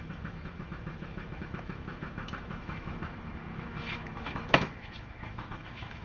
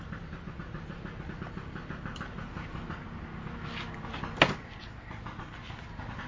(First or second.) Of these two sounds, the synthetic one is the first